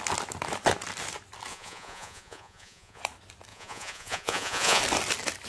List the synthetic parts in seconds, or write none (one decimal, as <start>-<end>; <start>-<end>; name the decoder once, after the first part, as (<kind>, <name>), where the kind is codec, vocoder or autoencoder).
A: 1.5-3.0 (vocoder, Vocos); 3.5-4.8